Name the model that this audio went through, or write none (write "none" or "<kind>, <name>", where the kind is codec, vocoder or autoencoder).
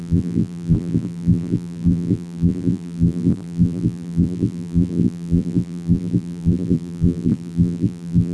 vocoder, BigVGAN v2